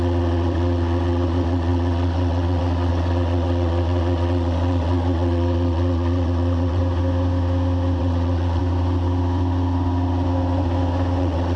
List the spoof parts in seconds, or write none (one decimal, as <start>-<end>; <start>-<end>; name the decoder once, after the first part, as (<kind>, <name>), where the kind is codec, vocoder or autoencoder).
0.0-6.8 (vocoder, WaveNeXt); 8.0-8.6; 11.2-11.6